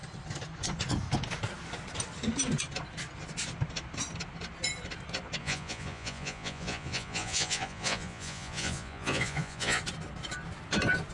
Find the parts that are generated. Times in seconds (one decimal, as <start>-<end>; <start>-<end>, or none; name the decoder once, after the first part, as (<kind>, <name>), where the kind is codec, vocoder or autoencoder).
5.4-9.8 (vocoder, Vocos)